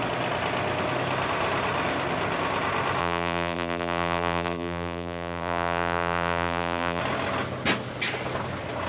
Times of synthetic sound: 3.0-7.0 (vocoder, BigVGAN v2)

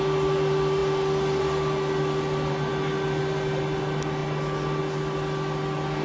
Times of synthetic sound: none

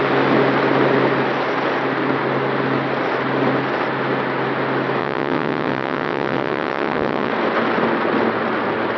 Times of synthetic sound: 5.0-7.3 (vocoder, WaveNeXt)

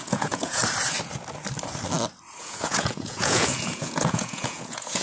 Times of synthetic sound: 0.0-0.6 (vocoder, Vocos); 2.4-5.0

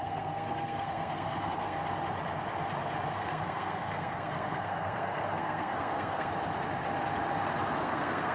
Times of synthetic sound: 0.0-1.8 (codec, SNAC); 3.1-6.3; 7.8-8.3

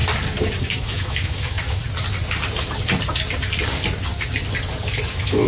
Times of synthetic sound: 0.7-1.8 (autoencoder, DAC-VAE); 5.1-5.5

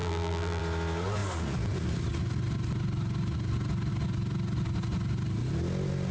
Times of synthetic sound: 0.0-0.6 (vocoder, BigVGAN v2)

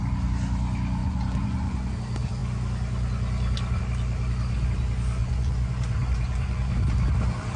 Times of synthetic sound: 1.0-1.9 (vocoder, Vocos); 5.2-6.7